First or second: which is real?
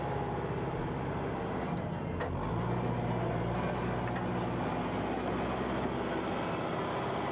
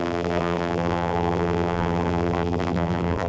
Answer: first